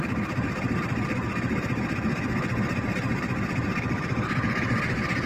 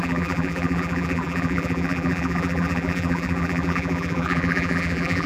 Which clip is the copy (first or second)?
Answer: second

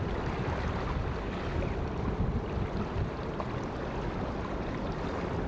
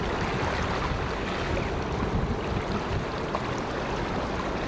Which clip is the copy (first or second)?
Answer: first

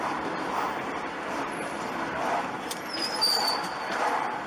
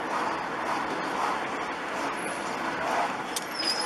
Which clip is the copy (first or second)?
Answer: first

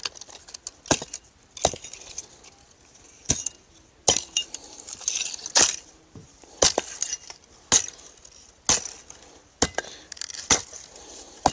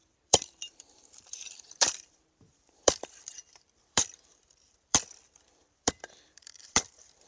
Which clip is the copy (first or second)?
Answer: second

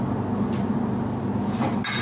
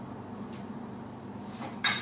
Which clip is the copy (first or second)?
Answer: second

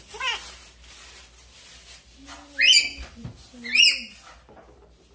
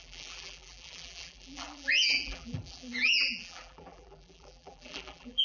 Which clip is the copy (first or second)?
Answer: second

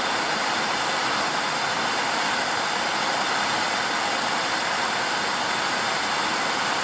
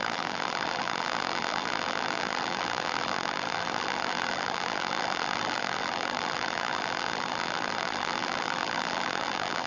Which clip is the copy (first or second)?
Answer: second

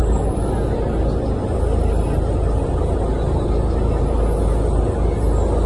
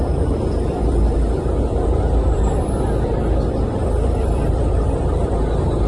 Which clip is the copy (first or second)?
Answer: second